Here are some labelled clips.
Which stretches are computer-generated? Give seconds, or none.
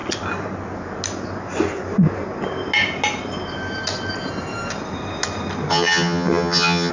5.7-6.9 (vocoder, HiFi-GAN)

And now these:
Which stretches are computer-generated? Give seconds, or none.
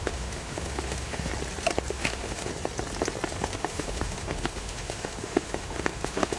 0.0-1.3 (autoencoder, DAC-VAE); 1.9-2.5; 3.3-6.4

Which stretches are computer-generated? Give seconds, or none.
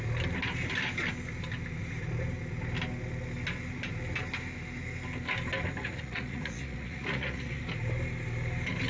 5.8-7.6 (vocoder, Vocos)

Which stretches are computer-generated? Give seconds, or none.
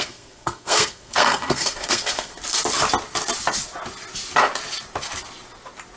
0.0-2.3 (codec, SNAC)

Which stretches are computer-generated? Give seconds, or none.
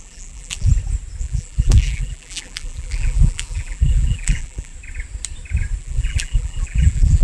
0.0-0.7 (vocoder, BigVGAN v2); 1.2-4.7; 5.8-7.2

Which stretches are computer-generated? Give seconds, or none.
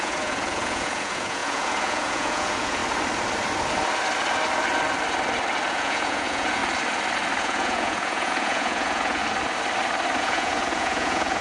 0.0-2.8 (vocoder, Vocos); 5.7-6.6; 7.4-9.2; 10.2-11.4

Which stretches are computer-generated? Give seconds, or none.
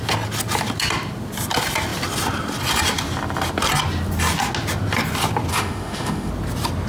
5.5-6.3 (autoencoder, DAC-VAE)